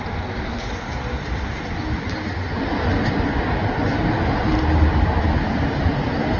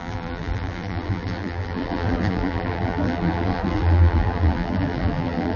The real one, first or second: first